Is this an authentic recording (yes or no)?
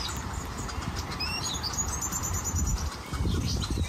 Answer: no